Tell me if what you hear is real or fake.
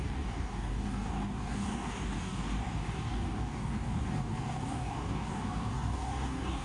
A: fake